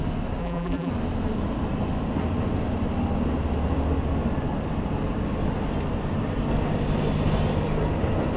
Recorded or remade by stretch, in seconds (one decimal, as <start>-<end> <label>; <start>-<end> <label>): 0.0-0.4 recorded; 0.4-0.9 remade; 0.9-8.4 recorded